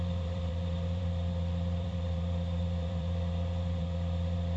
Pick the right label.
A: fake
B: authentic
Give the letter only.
A